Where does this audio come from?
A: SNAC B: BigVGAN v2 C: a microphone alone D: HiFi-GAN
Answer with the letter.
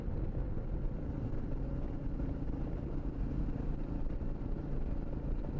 B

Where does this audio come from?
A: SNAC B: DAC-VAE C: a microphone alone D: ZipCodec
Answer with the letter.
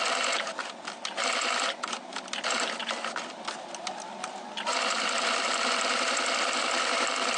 C